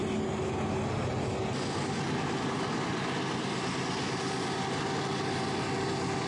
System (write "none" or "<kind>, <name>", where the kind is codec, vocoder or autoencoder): none